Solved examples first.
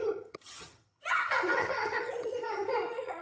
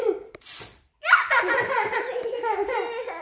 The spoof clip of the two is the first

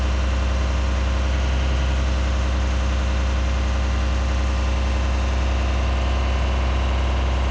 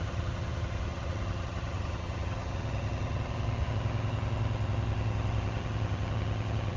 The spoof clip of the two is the second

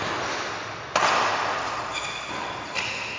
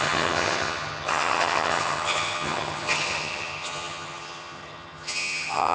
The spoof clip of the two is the second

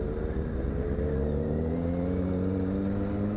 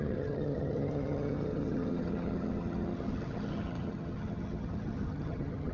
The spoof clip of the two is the second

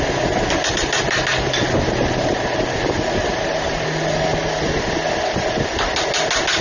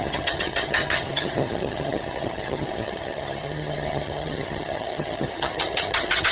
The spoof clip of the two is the second